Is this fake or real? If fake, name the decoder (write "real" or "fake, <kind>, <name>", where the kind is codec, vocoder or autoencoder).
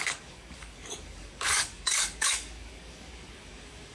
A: fake, codec, DAC